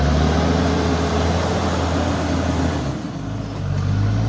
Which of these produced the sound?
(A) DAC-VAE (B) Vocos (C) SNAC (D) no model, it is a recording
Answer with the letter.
D